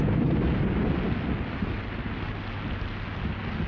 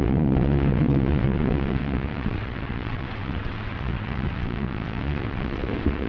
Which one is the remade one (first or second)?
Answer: second